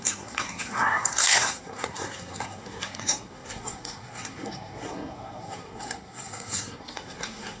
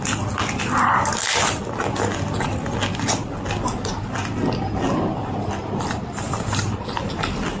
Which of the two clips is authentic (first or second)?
second